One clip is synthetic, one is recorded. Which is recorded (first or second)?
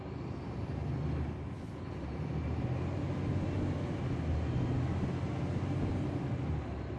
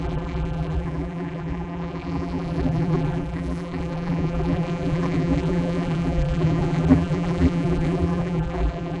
first